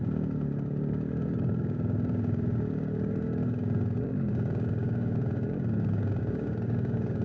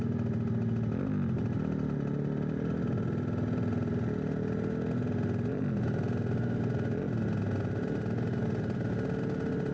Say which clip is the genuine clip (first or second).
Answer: second